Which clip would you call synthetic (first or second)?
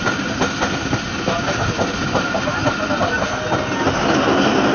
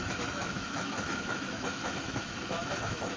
second